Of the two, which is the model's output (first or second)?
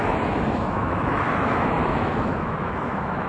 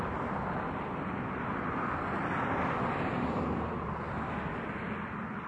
first